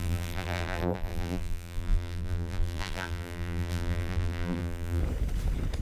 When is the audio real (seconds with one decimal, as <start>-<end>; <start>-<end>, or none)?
5.0-5.8